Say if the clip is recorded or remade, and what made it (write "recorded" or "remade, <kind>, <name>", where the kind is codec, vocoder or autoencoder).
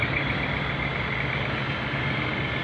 recorded